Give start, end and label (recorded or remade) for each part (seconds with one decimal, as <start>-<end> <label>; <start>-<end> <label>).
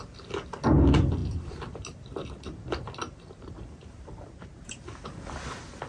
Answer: 0.0-1.2 recorded; 1.2-4.7 remade; 4.7-5.9 recorded